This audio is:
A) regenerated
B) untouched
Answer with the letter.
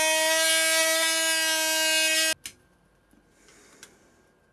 B